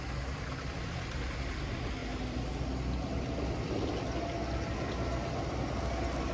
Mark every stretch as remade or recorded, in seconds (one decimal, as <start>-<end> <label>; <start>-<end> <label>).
0.0-6.3 recorded